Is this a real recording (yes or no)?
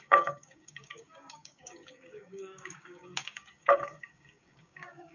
no